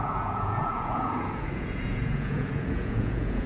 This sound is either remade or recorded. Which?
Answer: remade